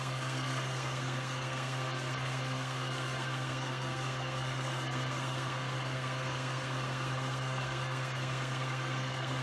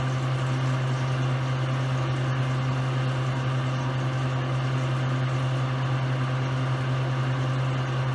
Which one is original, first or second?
second